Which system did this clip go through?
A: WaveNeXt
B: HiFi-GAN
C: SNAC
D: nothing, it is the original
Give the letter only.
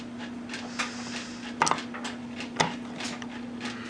D